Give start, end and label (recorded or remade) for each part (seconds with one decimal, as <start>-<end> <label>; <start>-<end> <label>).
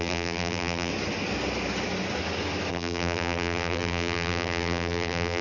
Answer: 0.0-0.9 remade; 0.9-2.7 recorded; 2.7-5.4 remade